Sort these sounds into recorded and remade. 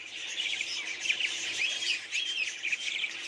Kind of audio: remade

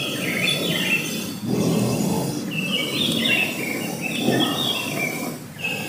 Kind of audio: recorded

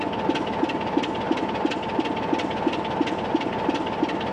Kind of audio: recorded